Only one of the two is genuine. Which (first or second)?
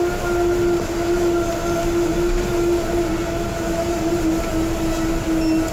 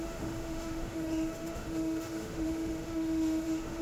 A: first